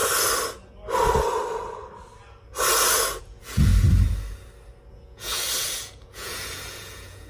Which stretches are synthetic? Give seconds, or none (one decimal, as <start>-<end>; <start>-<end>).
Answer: 3.2-3.7; 4.9-7.3

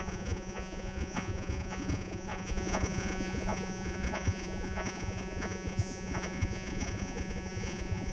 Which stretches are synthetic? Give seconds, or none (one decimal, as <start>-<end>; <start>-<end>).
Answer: 0.0-8.1

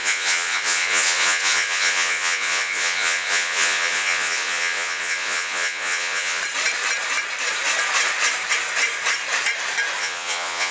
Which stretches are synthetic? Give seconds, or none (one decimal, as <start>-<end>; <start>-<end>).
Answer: 0.0-6.4; 10.0-10.7

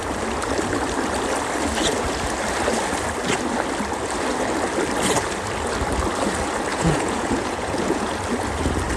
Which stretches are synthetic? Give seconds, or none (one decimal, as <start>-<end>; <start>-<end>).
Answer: 6.7-8.1

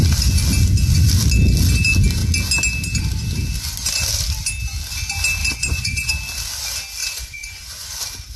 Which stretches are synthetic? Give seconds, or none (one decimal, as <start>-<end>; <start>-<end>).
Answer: 5.4-6.1; 7.0-7.9

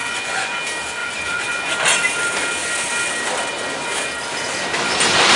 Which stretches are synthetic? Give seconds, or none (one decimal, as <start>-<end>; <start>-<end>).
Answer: 0.0-0.6; 1.0-1.7